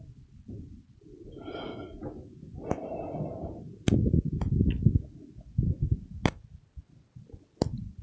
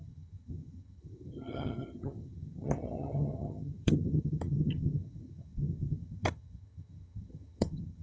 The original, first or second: first